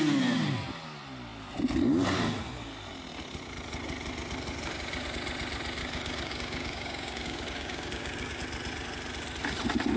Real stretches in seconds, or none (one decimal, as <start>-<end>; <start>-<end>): 0.0-5.8; 8.4-10.0